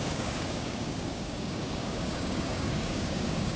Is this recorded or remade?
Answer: remade